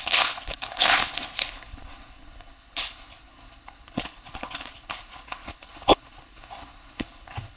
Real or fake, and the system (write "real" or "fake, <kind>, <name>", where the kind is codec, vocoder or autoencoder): fake, codec, HILCodec